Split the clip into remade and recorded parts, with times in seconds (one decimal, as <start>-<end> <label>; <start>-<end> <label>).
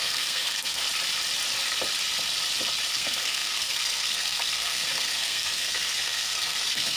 0.0-0.8 remade; 0.8-2.9 recorded; 2.9-7.0 remade